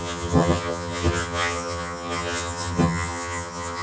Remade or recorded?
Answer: remade